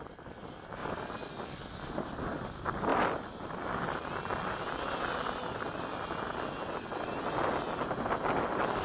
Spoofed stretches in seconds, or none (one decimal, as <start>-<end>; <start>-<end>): 0.8-1.3; 2.9-3.8; 5.9-7.2